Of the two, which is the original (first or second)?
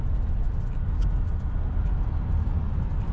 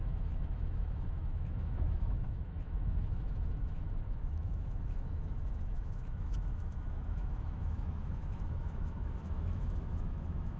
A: first